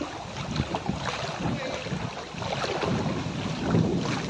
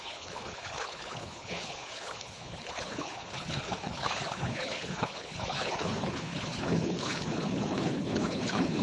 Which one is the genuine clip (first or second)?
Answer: first